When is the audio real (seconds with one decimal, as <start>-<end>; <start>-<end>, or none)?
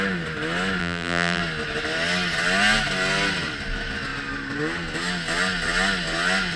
0.0-0.8; 1.4-6.6